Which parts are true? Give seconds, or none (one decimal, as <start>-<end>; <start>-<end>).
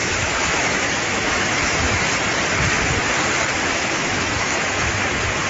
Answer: 2.1-3.6; 5.1-5.5